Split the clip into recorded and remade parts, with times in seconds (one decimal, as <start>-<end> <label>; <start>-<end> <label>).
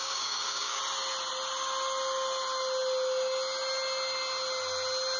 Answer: 0.0-0.8 remade; 0.8-5.2 recorded